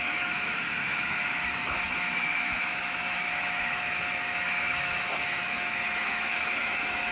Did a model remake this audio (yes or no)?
yes